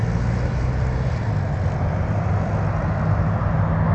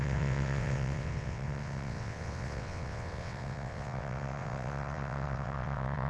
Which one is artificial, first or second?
second